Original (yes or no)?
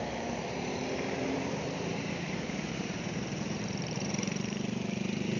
no